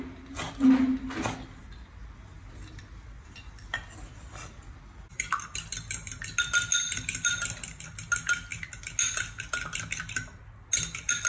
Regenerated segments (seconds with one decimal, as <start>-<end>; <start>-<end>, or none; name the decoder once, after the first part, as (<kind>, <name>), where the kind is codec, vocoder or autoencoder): none

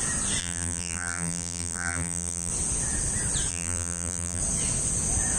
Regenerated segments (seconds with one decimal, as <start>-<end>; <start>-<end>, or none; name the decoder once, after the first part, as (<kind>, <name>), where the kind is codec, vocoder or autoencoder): 0.4-2.5 (vocoder, BigVGAN v2); 3.5-4.4

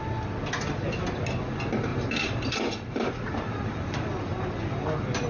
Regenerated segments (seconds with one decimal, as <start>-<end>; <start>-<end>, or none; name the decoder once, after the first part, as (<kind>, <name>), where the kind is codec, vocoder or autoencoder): 1.9-5.3 (vocoder, BigVGAN v2)